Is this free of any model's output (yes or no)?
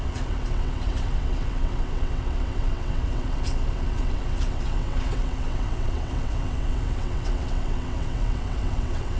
no